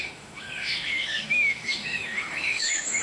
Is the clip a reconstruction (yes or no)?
yes